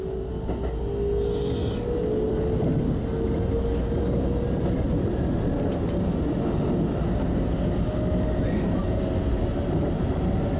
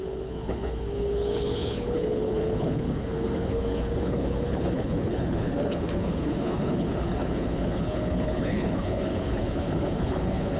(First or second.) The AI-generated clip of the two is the second